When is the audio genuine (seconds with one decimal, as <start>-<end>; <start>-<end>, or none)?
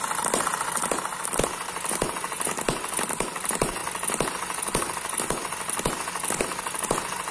0.0-7.3